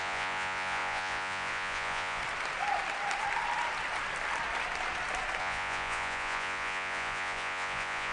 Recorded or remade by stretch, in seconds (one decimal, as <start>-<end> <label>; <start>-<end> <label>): 0.0-2.2 remade; 2.2-5.4 recorded; 5.4-8.1 remade